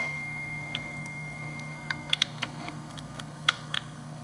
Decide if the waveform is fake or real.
fake